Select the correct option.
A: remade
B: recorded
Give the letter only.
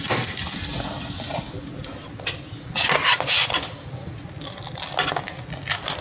B